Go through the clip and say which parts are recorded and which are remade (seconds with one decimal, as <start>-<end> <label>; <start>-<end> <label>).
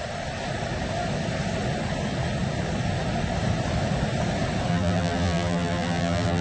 0.0-4.7 recorded; 4.7-6.4 remade